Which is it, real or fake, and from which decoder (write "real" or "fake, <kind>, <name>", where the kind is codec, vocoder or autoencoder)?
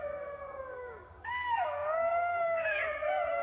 fake, codec, SNAC